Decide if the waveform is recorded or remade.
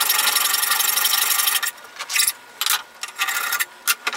recorded